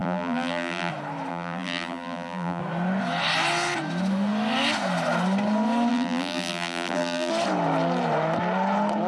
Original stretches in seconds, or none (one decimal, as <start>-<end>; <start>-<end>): 0.9-1.3; 2.6-5.9; 7.3-9.1

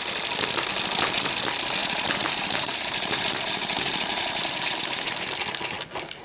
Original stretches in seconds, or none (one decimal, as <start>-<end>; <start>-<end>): 0.0-1.8; 5.1-6.2

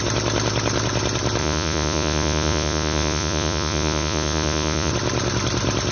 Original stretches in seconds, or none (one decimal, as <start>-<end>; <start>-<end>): 0.0-1.4; 4.9-5.9

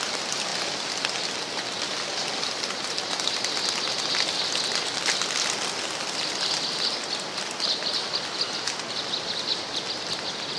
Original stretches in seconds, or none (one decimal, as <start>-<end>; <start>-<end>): 0.0-10.6